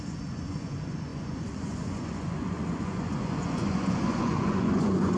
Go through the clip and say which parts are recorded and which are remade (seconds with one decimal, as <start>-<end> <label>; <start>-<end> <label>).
0.0-5.2 remade